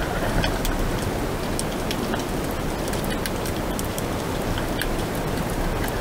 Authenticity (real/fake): real